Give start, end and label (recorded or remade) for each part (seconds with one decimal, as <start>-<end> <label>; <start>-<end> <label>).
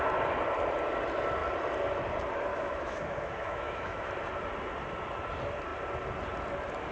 0.0-2.5 recorded; 2.5-4.1 remade; 4.1-6.9 recorded